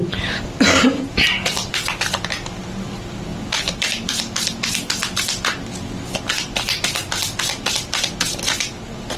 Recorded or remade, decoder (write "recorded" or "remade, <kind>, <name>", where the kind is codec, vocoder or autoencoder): recorded